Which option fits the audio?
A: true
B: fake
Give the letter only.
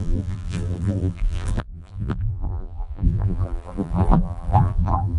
B